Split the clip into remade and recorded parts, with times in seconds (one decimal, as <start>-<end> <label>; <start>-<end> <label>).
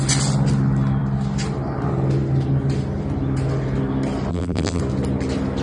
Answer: 0.0-4.3 recorded; 4.3-4.8 remade; 4.8-5.6 recorded